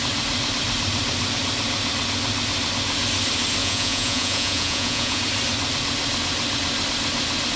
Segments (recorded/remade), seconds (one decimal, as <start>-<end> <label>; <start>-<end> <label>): 0.0-3.6 recorded; 3.6-5.2 remade; 5.2-7.6 recorded